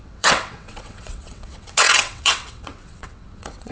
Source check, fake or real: fake